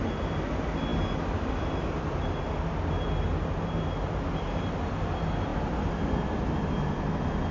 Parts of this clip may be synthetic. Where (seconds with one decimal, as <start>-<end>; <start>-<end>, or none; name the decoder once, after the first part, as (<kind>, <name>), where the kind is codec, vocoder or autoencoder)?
none